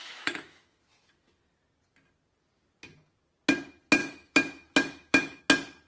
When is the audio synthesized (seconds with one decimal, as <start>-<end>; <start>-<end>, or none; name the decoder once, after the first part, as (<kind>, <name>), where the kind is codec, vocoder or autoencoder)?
0.0-0.8 (autoencoder, DAC-VAE); 4.0-5.4